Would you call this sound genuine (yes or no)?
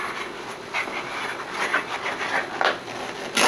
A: yes